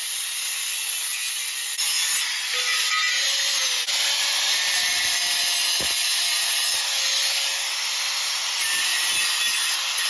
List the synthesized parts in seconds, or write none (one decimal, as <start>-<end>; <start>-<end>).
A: 0.0-0.7; 6.0-6.8